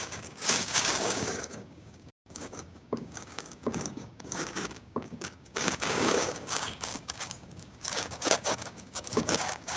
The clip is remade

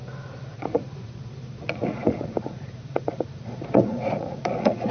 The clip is remade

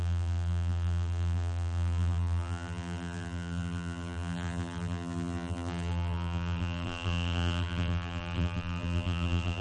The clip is remade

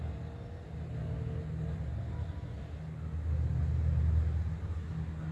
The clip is recorded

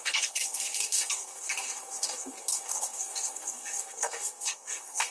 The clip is remade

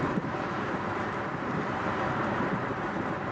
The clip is remade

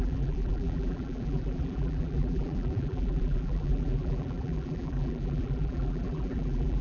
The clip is remade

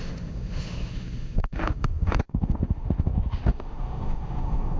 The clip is remade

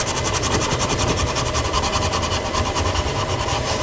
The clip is remade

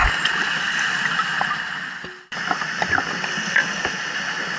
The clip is recorded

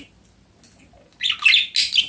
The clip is recorded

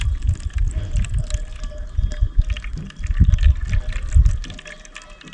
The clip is recorded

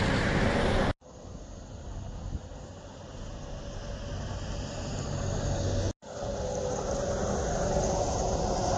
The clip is recorded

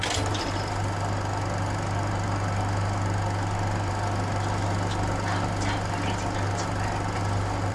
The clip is recorded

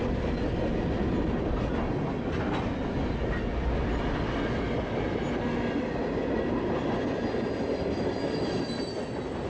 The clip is recorded